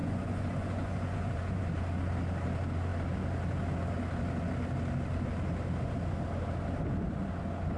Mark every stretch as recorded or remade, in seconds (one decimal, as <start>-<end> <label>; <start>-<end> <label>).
0.0-1.6 remade; 1.6-7.8 recorded

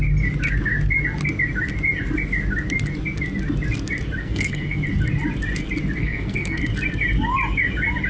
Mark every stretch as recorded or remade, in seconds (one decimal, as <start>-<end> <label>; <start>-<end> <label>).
0.0-4.2 recorded; 4.2-4.8 remade; 4.8-6.0 recorded; 6.0-6.6 remade; 6.6-8.1 recorded

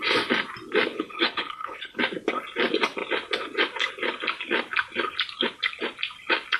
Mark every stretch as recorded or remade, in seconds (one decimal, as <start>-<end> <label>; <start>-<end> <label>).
0.0-0.9 recorded; 0.9-2.0 remade; 2.0-6.6 recorded

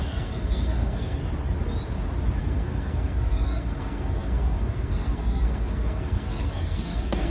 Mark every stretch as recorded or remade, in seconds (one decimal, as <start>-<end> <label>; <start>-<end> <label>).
0.0-1.2 remade; 1.2-2.4 recorded; 2.4-7.3 remade

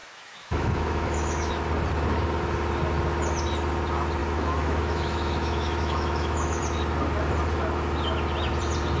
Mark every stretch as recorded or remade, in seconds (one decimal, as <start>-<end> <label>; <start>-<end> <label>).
0.0-1.5 remade; 1.5-4.2 recorded; 4.2-6.6 remade; 6.6-9.0 recorded

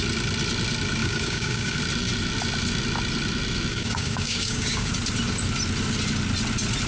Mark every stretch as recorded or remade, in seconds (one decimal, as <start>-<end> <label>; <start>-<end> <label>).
0.0-1.0 recorded; 1.0-1.8 remade; 1.8-3.7 recorded; 3.7-4.9 remade; 4.9-6.9 recorded

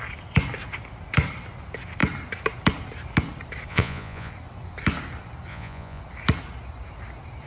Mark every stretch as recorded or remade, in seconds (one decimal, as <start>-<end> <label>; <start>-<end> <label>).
0.0-3.7 recorded; 3.7-4.3 remade; 4.3-5.5 recorded; 5.5-6.0 remade; 6.0-7.5 recorded